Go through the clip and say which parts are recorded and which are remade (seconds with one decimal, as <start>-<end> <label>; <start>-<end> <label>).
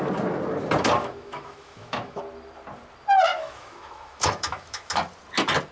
0.0-1.0 recorded; 1.0-2.2 remade; 2.2-3.3 recorded; 3.3-4.9 remade; 4.9-5.7 recorded